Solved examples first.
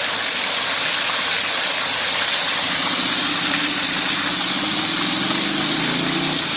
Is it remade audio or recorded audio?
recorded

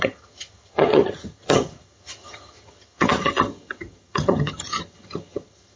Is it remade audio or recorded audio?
remade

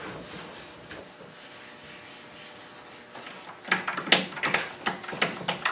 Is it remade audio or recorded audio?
recorded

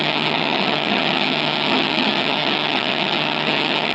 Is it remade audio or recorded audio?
remade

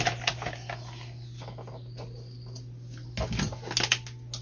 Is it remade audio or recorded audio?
recorded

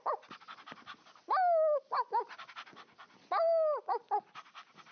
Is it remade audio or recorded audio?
recorded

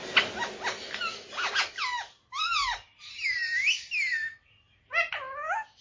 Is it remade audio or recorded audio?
recorded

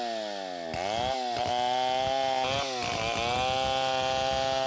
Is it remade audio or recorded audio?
recorded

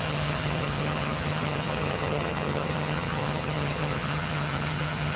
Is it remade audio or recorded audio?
remade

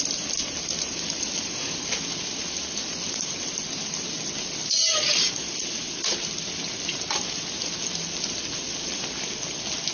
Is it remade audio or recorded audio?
recorded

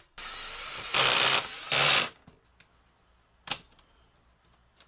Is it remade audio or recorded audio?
recorded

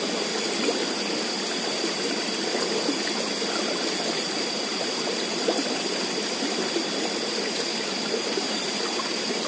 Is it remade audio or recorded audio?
recorded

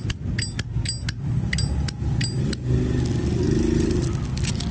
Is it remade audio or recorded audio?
recorded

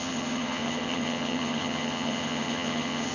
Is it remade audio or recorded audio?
remade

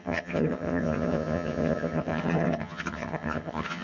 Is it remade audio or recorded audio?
remade